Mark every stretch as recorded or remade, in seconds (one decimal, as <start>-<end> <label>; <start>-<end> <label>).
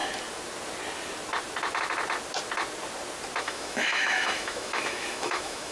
0.0-3.4 recorded; 3.4-5.7 remade